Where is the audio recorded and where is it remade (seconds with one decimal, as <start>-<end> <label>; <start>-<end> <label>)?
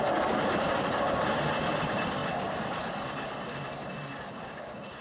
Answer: 0.0-5.0 recorded